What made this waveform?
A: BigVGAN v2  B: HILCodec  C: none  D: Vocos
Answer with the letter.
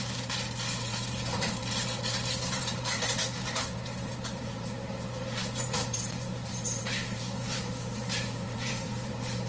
A